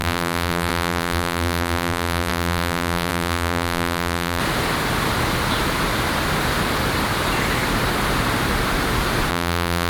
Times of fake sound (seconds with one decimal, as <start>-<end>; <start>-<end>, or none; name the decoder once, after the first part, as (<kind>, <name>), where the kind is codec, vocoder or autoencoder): 0.0-4.4 (vocoder, BigVGAN v2); 9.3-9.9